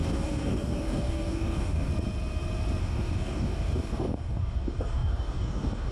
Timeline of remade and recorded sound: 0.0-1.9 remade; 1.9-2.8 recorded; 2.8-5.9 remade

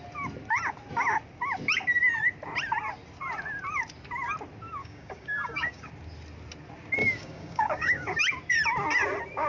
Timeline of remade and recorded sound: 0.0-4.8 recorded; 4.8-5.9 remade; 5.9-7.0 recorded; 7.0-8.2 remade; 8.2-9.5 recorded

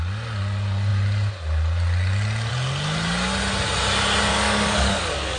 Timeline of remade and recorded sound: 0.0-4.3 recorded; 4.3-5.4 remade